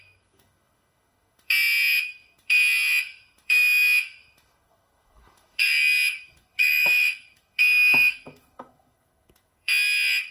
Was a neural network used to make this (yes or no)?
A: yes